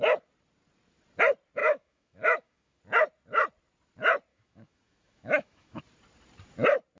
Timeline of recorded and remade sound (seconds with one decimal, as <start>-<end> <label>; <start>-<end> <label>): 0.0-1.6 recorded; 1.6-2.8 remade; 2.8-4.3 recorded; 4.3-5.8 remade; 5.8-7.0 recorded